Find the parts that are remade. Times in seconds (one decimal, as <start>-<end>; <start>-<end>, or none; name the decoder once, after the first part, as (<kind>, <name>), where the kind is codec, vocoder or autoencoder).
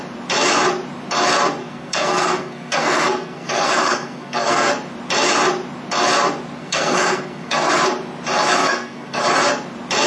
1.6-4.7 (codec, SNAC); 6.6-7.7; 8.6-9.2